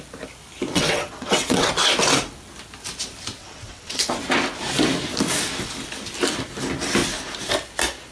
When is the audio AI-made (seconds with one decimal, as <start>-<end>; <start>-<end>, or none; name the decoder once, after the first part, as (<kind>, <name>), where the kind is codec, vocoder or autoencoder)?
0.7-1.7 (vocoder, WaveNeXt); 3.4-4.1